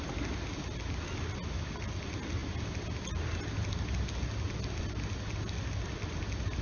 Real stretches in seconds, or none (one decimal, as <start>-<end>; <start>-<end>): 0.0-6.6